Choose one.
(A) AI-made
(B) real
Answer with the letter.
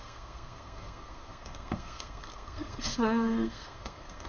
A